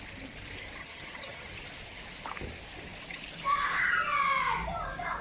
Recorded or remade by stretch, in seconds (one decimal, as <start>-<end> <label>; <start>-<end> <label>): 0.0-0.8 recorded; 0.8-1.5 remade; 1.5-5.2 recorded